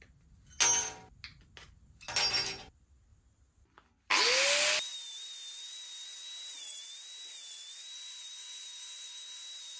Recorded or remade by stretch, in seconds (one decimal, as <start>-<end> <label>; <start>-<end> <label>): 0.0-9.8 recorded